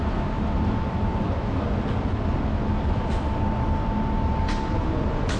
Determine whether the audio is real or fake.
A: real